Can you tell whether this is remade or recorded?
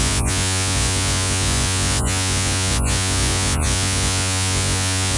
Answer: remade